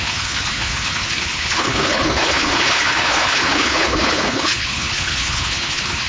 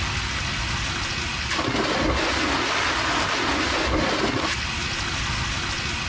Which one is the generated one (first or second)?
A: first